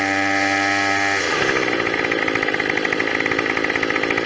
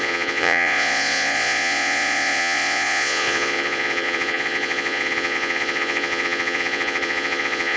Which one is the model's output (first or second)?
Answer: second